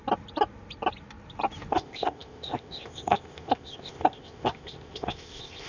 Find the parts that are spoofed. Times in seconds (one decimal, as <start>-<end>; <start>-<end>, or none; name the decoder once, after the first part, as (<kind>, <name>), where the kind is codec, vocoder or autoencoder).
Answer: 1.7-5.7 (codec, ZipCodec)